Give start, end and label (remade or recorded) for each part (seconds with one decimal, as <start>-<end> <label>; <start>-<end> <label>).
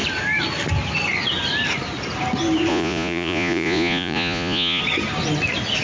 0.0-2.7 recorded; 2.7-4.8 remade; 4.8-5.8 recorded